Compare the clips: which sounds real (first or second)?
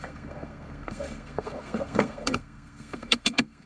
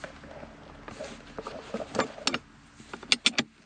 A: second